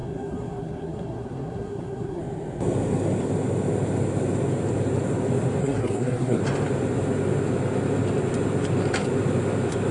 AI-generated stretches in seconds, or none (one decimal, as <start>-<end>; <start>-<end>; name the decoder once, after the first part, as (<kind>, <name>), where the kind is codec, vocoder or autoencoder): 0.0-2.2 (codec, SNAC); 5.6-6.4